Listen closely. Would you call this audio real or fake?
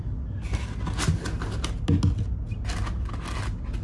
real